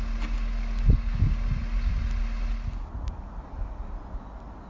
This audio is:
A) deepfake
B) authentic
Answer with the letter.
B